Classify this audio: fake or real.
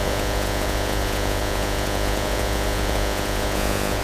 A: fake